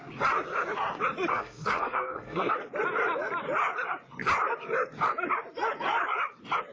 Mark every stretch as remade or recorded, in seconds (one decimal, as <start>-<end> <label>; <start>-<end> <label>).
0.0-1.3 recorded; 1.3-2.5 remade; 2.5-6.7 recorded